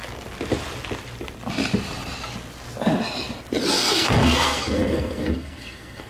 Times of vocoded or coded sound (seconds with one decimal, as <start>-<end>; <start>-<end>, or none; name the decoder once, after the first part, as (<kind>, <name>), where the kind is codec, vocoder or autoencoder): 3.7-6.1 (codec, SNAC)